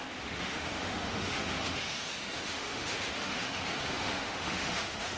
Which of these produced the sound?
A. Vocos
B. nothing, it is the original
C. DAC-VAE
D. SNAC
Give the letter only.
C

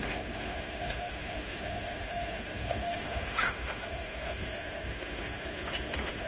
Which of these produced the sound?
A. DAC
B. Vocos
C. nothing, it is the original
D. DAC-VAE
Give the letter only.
D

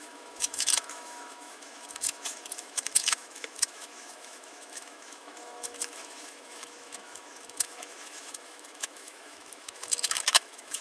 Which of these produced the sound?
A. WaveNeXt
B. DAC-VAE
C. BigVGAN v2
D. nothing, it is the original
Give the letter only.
B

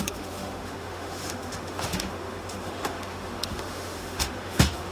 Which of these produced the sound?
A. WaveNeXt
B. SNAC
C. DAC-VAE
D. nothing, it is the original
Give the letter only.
C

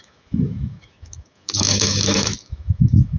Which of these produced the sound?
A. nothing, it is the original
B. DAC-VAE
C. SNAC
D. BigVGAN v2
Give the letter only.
B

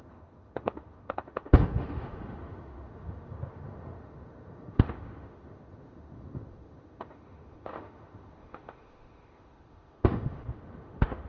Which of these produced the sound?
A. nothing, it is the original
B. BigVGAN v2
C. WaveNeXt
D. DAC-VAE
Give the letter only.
D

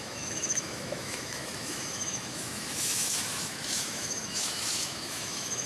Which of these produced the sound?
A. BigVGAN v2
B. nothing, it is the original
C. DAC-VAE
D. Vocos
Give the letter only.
C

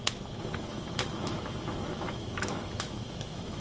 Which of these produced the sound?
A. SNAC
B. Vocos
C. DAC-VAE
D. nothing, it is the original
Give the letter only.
C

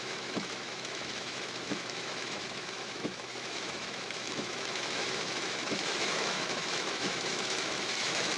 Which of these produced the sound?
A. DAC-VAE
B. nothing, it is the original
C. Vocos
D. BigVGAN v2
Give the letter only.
A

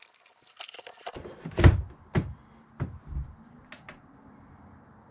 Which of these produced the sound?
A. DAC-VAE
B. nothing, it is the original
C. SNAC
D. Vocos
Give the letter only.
B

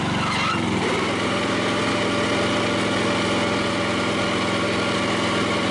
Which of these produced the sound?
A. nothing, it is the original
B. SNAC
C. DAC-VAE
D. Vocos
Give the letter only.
A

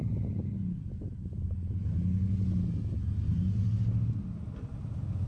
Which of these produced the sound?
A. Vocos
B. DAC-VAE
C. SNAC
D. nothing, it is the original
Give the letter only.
D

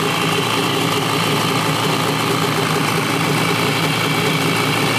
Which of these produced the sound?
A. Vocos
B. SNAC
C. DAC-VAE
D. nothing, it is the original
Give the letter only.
D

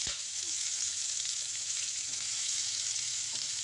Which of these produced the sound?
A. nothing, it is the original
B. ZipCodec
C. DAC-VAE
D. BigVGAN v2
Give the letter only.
C